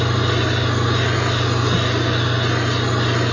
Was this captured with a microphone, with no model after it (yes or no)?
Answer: yes